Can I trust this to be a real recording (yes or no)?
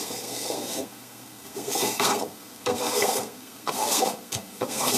no